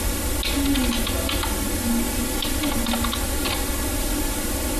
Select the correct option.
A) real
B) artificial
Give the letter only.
A